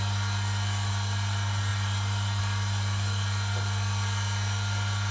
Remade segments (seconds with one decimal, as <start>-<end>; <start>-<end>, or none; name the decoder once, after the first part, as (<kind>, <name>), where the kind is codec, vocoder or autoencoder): 1.7-2.4 (vocoder, BigVGAN v2)